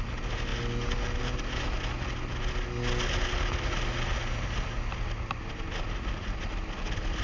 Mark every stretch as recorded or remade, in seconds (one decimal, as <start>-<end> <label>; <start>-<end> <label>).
0.0-7.2 recorded